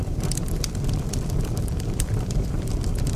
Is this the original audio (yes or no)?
no